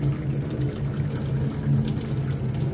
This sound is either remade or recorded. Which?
recorded